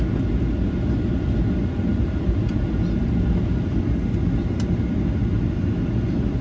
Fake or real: real